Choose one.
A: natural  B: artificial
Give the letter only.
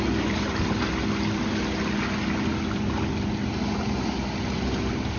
A